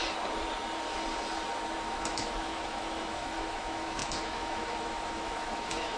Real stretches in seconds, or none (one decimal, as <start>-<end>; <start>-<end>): 0.0-1.8